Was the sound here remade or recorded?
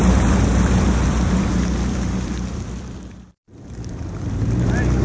remade